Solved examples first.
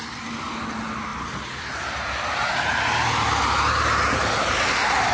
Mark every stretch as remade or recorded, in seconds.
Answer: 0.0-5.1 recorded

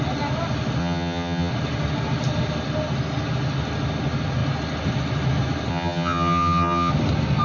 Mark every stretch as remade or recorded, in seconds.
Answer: 0.0-0.8 recorded; 0.8-1.5 remade; 1.5-5.7 recorded; 5.7-6.9 remade; 6.9-7.4 recorded

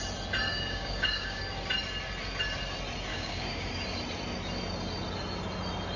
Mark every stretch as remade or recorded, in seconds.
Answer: 0.0-0.5 recorded; 0.5-1.4 remade; 1.4-3.1 recorded; 3.1-3.7 remade; 3.7-6.0 recorded

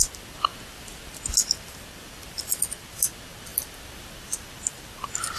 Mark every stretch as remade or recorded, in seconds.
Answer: 0.0-5.4 recorded

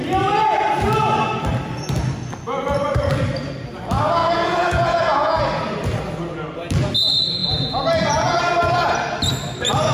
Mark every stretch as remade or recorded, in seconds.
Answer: 0.0-4.2 recorded; 4.2-5.4 remade; 5.4-7.4 recorded; 7.4-8.4 remade; 8.4-9.9 recorded

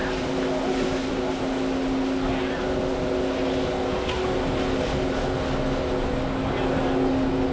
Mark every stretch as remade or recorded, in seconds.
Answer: 0.0-7.5 recorded

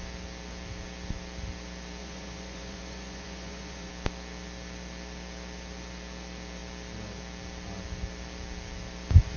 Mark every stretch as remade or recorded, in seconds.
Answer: 0.0-2.0 recorded; 2.0-3.9 remade; 3.9-9.4 recorded

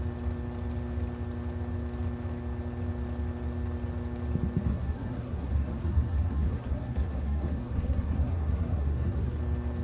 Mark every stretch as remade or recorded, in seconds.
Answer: 0.0-4.7 recorded; 4.7-9.4 remade; 9.4-9.8 recorded